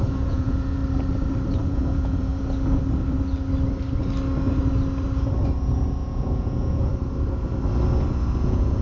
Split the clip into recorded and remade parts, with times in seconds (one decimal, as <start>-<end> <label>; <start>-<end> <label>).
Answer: 0.0-0.8 remade; 0.8-1.6 recorded; 1.6-2.3 remade; 2.3-6.1 recorded; 6.1-6.9 remade; 6.9-8.4 recorded; 8.4-8.8 remade